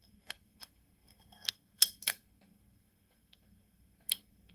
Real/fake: fake